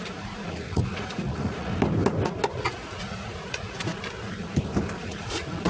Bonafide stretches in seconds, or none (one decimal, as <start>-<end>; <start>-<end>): 1.7-2.5; 3.9-5.0